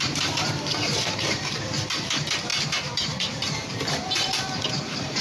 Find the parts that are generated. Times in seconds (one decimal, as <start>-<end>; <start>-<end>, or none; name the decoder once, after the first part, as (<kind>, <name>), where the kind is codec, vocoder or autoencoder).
0.0-5.2 (vocoder, BigVGAN v2)